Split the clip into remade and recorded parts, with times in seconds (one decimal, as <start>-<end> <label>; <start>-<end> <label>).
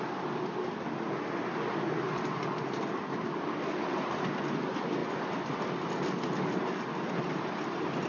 0.0-8.1 recorded